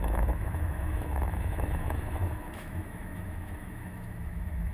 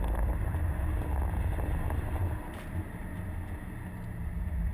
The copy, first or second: first